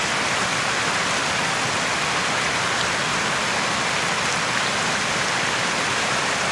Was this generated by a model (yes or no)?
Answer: no